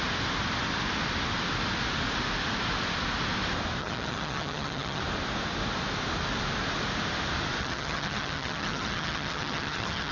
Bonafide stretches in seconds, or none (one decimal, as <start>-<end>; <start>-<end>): 0.0-3.8; 5.0-7.6